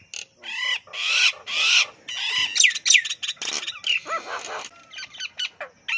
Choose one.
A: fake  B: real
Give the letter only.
B